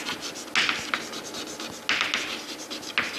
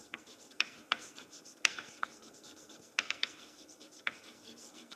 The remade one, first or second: second